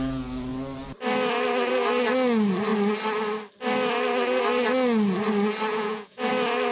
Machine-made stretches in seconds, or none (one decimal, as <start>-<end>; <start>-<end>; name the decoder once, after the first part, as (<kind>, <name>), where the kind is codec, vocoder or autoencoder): 5.7-6.3 (vocoder, Vocos)